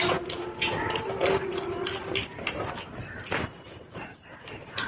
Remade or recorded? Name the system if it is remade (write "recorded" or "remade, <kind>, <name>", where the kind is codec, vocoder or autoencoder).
recorded